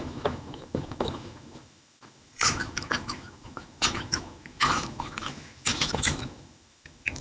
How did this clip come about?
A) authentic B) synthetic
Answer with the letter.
B